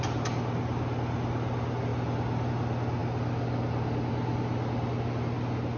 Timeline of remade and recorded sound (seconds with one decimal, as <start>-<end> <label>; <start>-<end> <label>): 0.0-5.8 recorded